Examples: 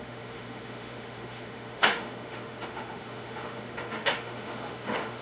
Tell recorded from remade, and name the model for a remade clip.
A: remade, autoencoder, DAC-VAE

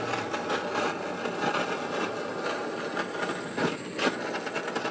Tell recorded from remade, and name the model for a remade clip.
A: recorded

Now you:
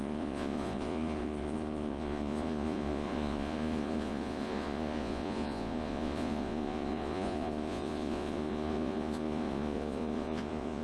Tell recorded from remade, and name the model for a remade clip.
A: remade, vocoder, Vocos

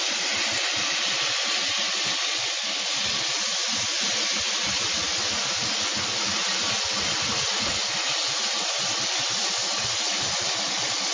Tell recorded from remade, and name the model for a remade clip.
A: recorded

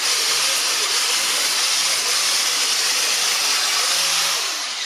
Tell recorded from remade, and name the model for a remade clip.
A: recorded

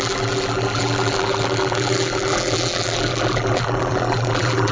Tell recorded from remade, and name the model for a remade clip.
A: remade, vocoder, BigVGAN v2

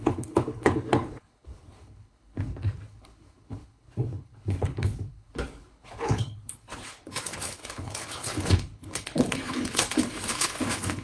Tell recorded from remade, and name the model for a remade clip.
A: remade, codec, HILCodec